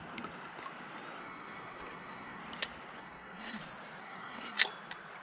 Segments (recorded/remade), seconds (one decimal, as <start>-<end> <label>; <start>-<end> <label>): 0.0-1.2 recorded; 1.2-2.4 remade; 2.4-3.0 recorded; 3.0-3.6 remade; 3.6-4.0 recorded; 4.0-4.6 remade; 4.6-5.2 recorded